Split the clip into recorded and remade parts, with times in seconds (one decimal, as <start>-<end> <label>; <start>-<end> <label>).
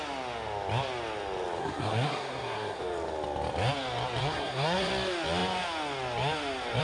0.0-1.6 recorded; 1.6-2.8 remade; 2.8-4.2 recorded; 4.2-4.9 remade; 4.9-6.8 recorded